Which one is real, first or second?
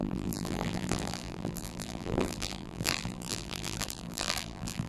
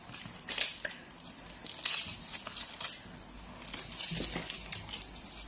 second